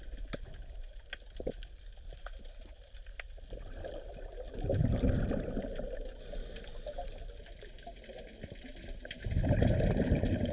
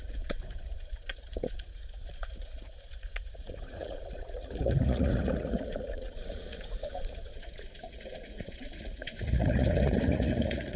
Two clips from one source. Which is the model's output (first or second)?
second